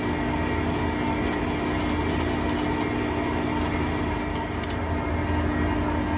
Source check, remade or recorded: recorded